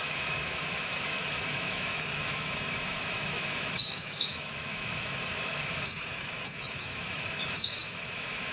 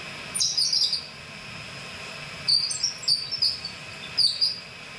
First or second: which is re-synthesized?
first